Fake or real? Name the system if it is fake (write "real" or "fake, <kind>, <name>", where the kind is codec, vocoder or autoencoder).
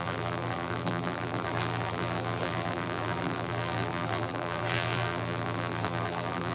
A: fake, vocoder, BigVGAN v2